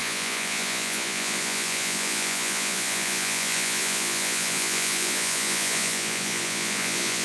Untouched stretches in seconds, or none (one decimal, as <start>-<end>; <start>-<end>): none